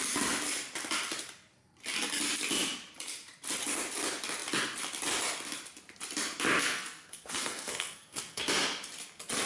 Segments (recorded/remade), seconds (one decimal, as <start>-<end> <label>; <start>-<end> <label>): 0.0-6.6 recorded; 6.6-8.4 remade; 8.4-9.5 recorded